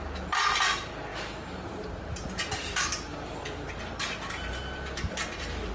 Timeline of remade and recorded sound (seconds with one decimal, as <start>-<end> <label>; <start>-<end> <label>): 0.0-5.7 recorded